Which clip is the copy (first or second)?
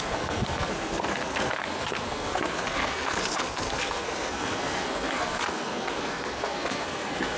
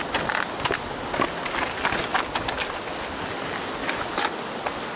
first